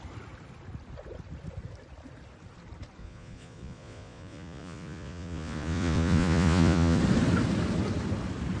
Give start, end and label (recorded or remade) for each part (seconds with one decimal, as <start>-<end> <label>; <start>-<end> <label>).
0.0-3.0 recorded; 3.0-7.0 remade; 7.0-8.6 recorded